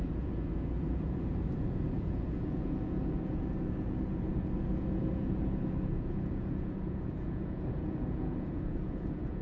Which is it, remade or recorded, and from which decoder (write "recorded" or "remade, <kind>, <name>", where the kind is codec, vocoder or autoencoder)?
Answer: remade, vocoder, Vocos